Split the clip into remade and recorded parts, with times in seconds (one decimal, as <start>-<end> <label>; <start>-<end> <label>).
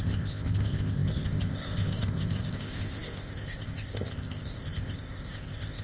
0.0-5.8 remade